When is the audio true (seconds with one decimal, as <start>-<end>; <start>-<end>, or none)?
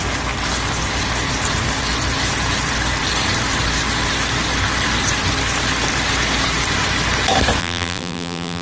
0.0-7.6